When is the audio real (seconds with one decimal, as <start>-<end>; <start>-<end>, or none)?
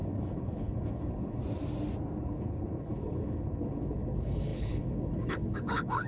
1.4-2.2